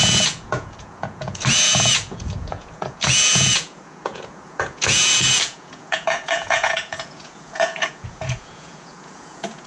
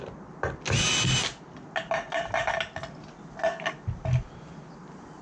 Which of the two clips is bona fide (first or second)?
second